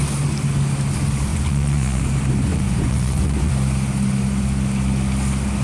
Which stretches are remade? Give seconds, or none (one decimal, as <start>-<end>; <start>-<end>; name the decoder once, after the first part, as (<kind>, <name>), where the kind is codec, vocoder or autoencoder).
1.3-2.0 (vocoder, Vocos); 2.5-3.5